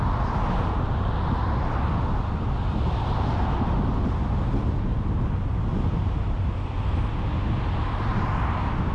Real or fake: real